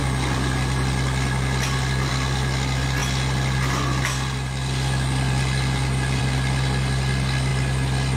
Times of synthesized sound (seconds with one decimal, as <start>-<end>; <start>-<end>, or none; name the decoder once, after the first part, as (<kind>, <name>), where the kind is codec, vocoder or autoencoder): 0.0-2.1 (vocoder, BigVGAN v2); 3.0-6.2